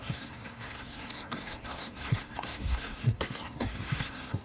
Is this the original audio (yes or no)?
no